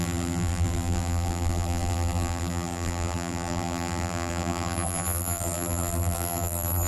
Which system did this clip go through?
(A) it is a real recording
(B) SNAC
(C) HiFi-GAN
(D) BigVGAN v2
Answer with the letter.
D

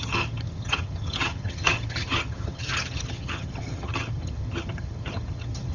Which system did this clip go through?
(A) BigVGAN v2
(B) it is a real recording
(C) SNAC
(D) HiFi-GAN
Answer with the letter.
D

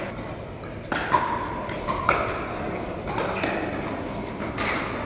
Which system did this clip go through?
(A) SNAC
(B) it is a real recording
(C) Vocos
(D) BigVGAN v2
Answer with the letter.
B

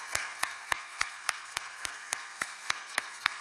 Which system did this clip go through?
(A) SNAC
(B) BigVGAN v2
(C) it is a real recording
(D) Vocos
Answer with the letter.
A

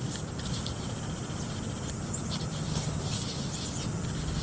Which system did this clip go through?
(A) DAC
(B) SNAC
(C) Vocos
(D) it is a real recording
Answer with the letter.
D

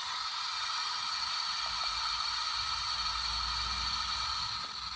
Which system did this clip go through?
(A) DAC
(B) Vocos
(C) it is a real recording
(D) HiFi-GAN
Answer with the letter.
C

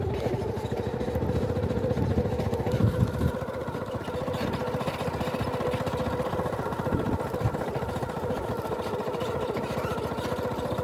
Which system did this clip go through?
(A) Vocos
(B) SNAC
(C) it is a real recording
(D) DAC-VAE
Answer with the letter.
C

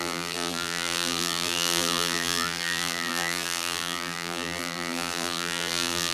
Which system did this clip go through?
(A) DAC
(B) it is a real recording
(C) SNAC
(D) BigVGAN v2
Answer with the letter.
D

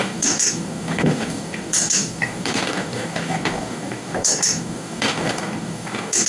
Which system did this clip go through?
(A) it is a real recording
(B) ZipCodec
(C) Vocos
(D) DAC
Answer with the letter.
D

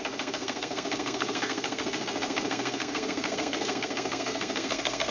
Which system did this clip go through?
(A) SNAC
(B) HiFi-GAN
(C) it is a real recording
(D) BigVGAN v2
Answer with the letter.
A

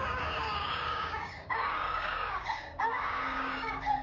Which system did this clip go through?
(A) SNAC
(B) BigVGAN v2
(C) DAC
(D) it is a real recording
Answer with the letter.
C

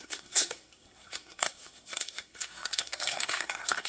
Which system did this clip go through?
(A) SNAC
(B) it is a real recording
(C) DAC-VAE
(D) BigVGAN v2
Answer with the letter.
A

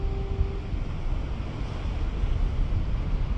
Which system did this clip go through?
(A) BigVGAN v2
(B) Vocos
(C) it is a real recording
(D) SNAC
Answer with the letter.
C